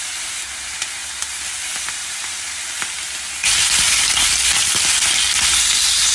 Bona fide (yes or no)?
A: yes